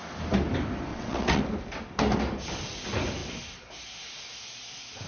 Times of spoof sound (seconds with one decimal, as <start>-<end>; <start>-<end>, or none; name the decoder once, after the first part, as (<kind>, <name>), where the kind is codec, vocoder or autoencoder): 0.9-1.4 (vocoder, WaveNeXt)